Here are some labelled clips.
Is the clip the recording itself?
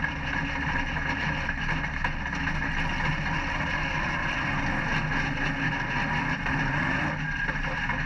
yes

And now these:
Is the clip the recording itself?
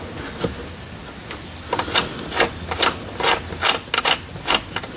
yes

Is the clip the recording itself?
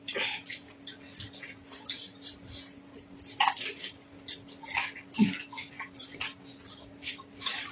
yes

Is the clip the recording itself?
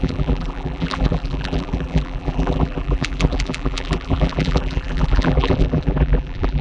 no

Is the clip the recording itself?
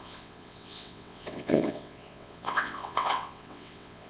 no